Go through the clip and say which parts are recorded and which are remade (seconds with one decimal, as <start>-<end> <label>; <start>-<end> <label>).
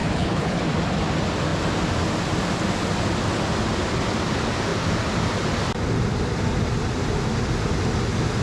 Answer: 0.0-0.6 remade; 0.6-8.4 recorded